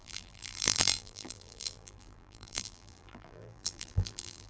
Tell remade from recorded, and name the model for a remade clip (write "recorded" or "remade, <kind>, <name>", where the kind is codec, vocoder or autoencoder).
remade, vocoder, BigVGAN v2